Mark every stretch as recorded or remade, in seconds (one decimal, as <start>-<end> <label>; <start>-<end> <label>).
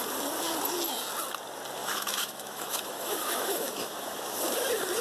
0.0-1.8 recorded; 1.8-4.4 remade; 4.4-5.0 recorded